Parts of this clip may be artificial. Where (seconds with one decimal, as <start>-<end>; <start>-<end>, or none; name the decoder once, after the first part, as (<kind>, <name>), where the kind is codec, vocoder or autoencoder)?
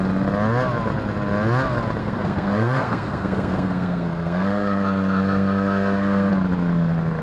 2.0-6.3 (codec, SNAC)